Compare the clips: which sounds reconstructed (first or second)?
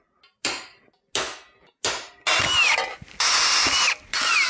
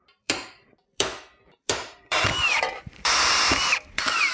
second